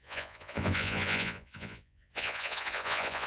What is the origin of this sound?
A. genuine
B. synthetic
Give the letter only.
B